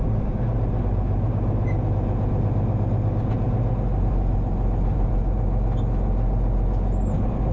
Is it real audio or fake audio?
real